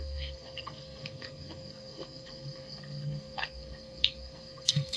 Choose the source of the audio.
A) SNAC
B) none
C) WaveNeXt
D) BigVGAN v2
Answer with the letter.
A